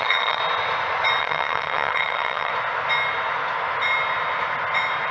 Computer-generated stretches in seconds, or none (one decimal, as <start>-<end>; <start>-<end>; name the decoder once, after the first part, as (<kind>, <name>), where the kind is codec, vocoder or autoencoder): 0.0-0.4 (vocoder, HiFi-GAN); 1.2-2.5